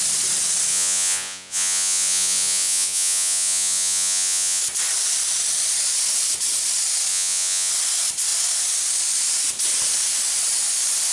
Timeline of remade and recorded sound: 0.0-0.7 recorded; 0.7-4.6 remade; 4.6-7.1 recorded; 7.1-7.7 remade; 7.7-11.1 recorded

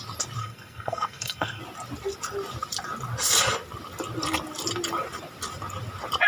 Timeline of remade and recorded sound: 0.0-0.4 recorded; 0.4-1.6 remade; 1.6-6.3 recorded